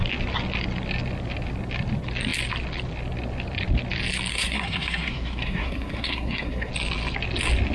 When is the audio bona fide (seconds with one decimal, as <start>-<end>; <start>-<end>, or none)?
0.0-4.3; 6.7-7.7